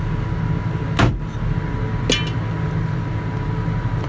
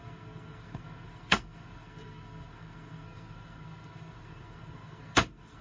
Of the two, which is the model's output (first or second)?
second